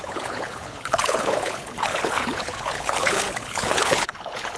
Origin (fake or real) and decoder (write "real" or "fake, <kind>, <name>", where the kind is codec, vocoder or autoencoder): fake, codec, HILCodec